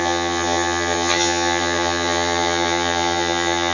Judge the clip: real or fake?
fake